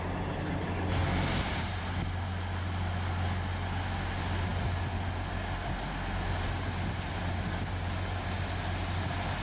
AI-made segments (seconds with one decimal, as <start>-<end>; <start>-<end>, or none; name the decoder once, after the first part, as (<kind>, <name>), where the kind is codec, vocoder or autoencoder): 1.0-1.8 (vocoder, BigVGAN v2)